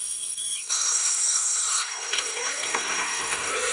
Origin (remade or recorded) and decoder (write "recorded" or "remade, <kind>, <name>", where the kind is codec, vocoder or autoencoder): remade, codec, SNAC